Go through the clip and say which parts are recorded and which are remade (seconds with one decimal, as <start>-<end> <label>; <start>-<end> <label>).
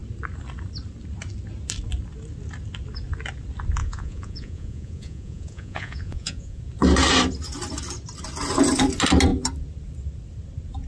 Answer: 0.0-3.8 recorded; 3.8-6.6 remade; 6.6-10.9 recorded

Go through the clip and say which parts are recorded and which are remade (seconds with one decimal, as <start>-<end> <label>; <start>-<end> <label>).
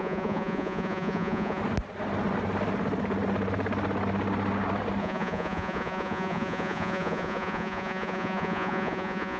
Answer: 0.0-1.6 remade; 1.6-5.0 recorded; 5.0-9.4 remade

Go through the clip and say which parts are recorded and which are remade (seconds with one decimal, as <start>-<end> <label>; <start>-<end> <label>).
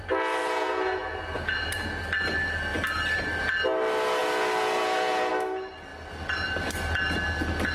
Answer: 0.0-0.4 recorded; 0.4-2.0 remade; 2.0-4.2 recorded; 4.2-5.3 remade; 5.3-7.7 recorded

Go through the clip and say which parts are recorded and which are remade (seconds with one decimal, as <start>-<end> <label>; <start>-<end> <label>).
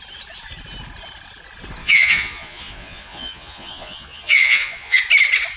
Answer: 0.0-1.8 recorded; 1.8-5.0 remade; 5.0-5.6 recorded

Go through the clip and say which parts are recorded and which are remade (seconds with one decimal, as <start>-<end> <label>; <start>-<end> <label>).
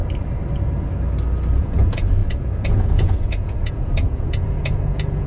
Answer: 0.0-1.6 recorded; 1.6-5.3 remade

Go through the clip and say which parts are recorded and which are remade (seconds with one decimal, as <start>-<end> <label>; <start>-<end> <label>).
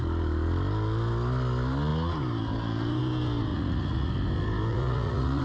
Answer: 0.0-3.5 recorded; 3.5-4.1 remade; 4.1-4.7 recorded; 4.7-5.4 remade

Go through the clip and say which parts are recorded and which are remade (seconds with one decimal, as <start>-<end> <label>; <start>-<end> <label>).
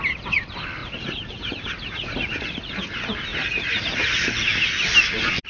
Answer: 0.0-0.8 recorded; 0.8-2.7 remade; 2.7-3.3 recorded; 3.3-4.2 remade; 4.2-5.5 recorded